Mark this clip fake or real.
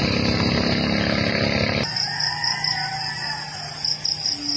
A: real